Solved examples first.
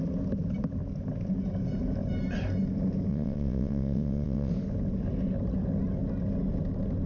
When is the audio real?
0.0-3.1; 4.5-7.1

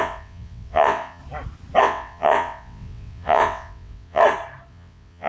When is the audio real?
1.2-1.8; 4.2-4.7